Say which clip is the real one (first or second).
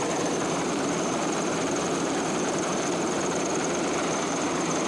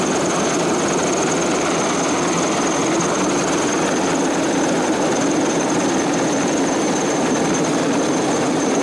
second